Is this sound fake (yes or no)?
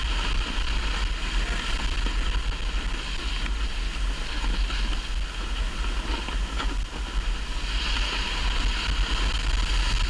no